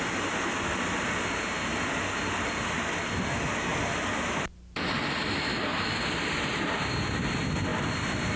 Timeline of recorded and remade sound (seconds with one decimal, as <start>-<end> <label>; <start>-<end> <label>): 0.0-1.7 recorded; 1.7-3.3 remade; 3.3-3.7 recorded; 3.7-7.0 remade; 7.0-7.7 recorded; 7.7-8.4 remade